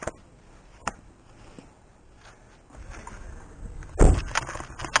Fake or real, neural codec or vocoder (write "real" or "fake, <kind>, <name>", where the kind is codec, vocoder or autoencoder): real